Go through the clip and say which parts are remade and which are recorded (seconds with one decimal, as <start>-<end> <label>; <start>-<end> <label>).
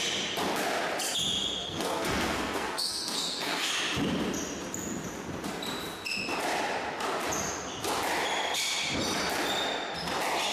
0.0-1.6 recorded; 1.6-3.7 remade; 3.7-10.5 recorded